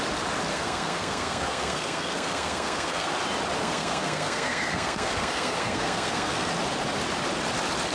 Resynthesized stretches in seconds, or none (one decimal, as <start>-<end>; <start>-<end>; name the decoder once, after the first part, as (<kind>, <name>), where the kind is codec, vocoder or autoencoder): 0.5-3.1 (codec, SNAC); 3.6-6.5